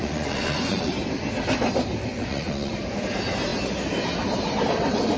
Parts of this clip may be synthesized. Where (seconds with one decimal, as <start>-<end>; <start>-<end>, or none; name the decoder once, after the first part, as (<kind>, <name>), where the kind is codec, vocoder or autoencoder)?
0.0-0.9 (vocoder, Vocos); 2.1-2.7